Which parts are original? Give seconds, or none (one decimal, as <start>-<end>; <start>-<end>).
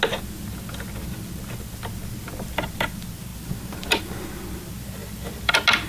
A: 0.0-5.0; 5.5-5.9